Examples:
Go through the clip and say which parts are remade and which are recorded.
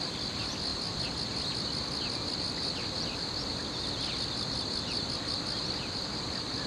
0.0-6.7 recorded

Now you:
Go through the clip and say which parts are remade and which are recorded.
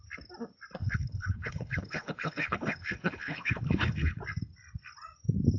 0.0-0.8 recorded; 0.8-4.2 remade; 4.2-5.6 recorded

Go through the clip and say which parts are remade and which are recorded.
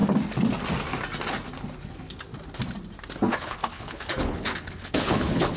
0.0-3.4 recorded; 3.4-5.6 remade